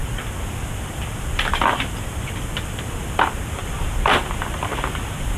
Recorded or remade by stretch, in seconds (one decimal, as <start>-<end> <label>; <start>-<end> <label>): 0.0-5.4 remade